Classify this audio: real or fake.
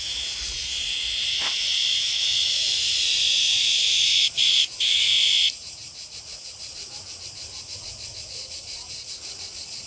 fake